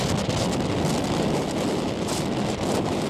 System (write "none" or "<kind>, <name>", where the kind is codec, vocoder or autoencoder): none